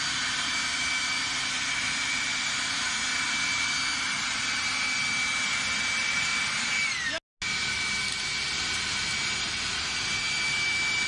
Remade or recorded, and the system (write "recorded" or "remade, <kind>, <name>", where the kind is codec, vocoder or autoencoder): recorded